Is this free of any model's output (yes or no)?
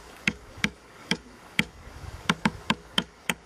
no